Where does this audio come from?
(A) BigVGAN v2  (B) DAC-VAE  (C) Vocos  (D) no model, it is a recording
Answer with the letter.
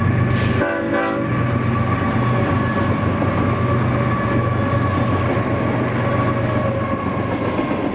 D